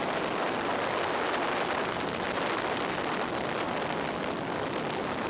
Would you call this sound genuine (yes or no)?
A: yes